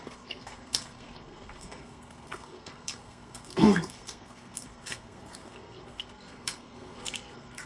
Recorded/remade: remade